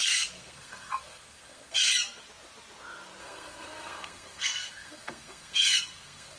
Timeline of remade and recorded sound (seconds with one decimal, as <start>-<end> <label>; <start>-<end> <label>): 0.0-1.9 remade; 1.9-3.2 recorded; 3.2-6.4 remade